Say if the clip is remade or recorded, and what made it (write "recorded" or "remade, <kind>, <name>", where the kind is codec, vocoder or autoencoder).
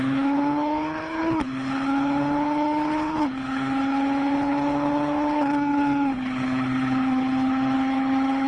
remade, codec, HILCodec